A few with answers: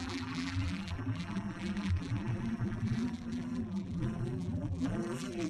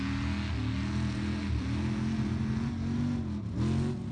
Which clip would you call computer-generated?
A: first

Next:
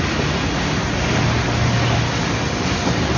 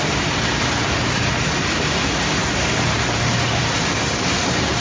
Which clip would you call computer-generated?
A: second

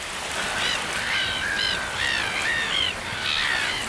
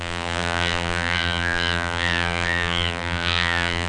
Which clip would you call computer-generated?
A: second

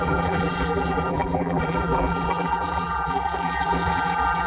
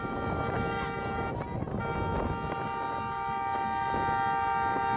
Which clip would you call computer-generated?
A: first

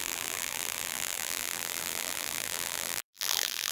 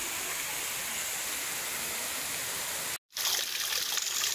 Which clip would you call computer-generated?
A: first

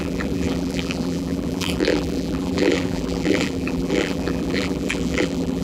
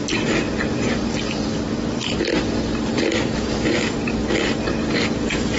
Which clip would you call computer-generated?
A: first